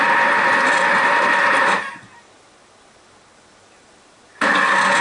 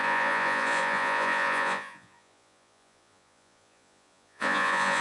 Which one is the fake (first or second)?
second